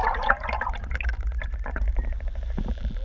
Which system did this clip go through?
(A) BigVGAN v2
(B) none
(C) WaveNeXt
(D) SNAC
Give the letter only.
A